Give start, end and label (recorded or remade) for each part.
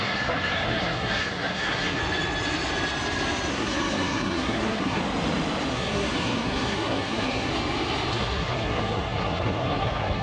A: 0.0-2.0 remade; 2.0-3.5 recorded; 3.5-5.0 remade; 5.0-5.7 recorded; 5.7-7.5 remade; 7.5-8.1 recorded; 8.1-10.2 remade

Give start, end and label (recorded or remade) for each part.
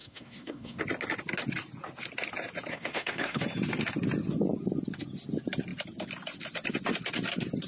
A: 0.0-0.8 remade; 0.8-2.7 recorded; 2.7-3.4 remade; 3.4-7.7 recorded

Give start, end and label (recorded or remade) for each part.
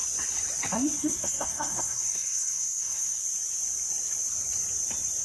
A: 0.0-1.0 recorded; 1.0-3.2 remade; 3.2-5.2 recorded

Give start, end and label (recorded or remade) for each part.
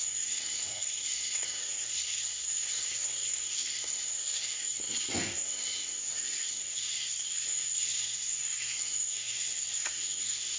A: 0.0-10.6 remade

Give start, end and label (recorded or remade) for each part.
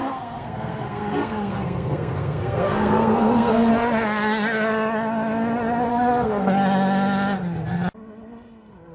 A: 0.0-3.7 remade; 3.7-5.9 recorded; 5.9-6.5 remade; 6.5-8.9 recorded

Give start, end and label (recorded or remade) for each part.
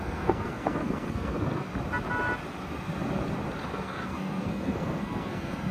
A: 0.0-1.7 remade; 1.7-3.6 recorded; 3.6-5.7 remade